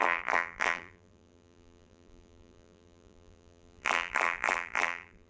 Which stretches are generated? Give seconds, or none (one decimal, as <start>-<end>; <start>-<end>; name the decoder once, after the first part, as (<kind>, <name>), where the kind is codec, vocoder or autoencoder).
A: 0.0-5.3 (vocoder, BigVGAN v2)